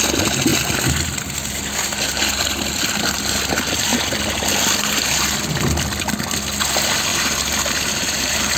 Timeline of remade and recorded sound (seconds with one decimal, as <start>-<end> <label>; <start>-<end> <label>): 0.0-7.1 recorded; 7.1-8.6 remade